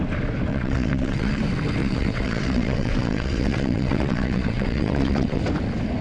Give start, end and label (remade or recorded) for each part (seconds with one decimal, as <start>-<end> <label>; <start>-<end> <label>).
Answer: 0.0-0.5 recorded; 0.5-1.4 remade; 1.4-1.8 recorded; 1.8-5.4 remade; 5.4-6.0 recorded